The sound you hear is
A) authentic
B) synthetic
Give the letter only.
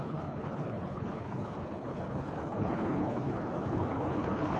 B